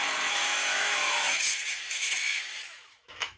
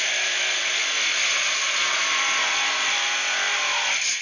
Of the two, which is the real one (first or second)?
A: second